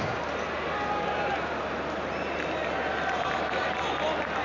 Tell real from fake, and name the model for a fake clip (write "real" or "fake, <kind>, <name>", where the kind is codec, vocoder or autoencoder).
real